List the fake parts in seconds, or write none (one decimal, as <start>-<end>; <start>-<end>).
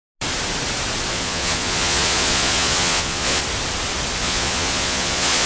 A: 1.1-3.4; 4.2-5.5